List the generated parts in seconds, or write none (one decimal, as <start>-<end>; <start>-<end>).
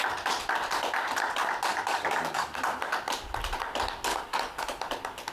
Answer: 1.7-2.6; 4.1-4.8